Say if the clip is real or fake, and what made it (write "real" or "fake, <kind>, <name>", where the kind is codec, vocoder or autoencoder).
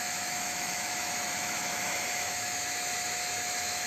fake, autoencoder, DAC-VAE